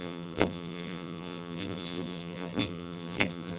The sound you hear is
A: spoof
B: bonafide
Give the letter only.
A